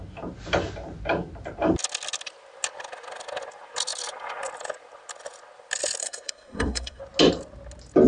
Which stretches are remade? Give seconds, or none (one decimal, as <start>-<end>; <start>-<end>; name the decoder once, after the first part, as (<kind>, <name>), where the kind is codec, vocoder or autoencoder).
6.0-7.0 (codec, SNAC)